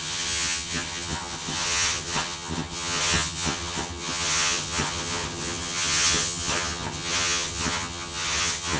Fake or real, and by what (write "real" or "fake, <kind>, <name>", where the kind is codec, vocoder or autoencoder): fake, vocoder, HiFi-GAN